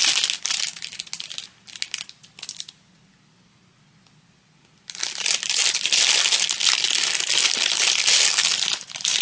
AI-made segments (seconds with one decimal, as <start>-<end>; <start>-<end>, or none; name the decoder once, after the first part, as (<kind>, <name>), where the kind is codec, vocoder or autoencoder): none